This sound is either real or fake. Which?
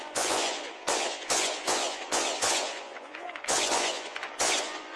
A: fake